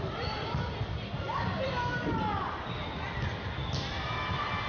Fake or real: real